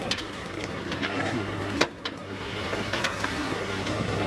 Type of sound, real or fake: fake